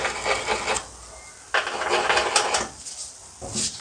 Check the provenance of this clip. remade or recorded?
recorded